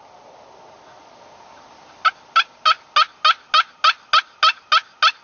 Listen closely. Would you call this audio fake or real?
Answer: real